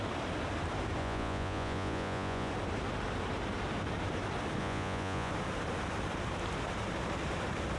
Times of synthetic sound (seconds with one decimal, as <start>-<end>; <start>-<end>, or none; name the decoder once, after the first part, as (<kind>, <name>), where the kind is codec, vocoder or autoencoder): 1.0-2.5 (vocoder, Vocos); 4.6-5.3